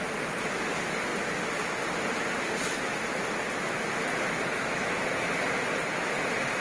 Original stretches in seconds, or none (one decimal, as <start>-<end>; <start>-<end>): 0.0-4.6; 5.4-6.6